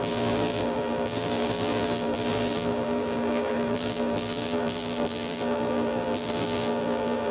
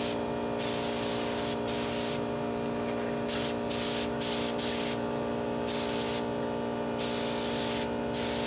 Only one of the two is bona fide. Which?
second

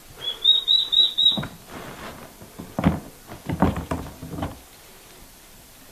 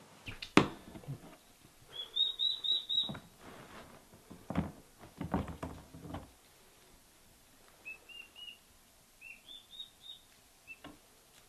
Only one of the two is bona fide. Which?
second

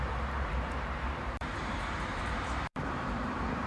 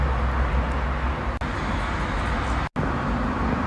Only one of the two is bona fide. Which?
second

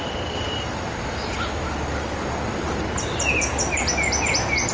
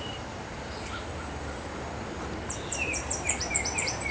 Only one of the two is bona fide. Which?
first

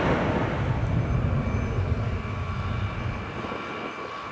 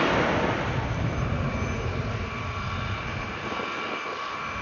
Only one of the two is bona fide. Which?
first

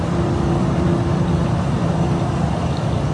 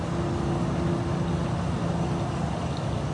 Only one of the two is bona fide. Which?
second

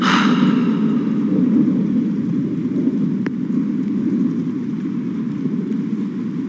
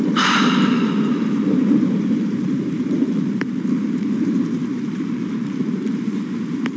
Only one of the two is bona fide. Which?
first